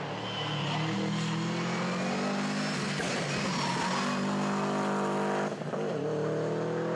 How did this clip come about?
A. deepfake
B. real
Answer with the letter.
B